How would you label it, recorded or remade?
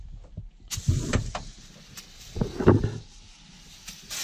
recorded